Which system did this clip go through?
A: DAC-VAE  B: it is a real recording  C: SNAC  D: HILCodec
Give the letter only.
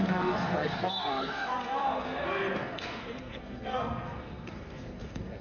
C